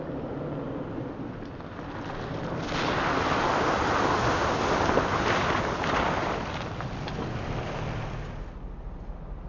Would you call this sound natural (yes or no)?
yes